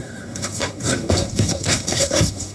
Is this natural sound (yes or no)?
no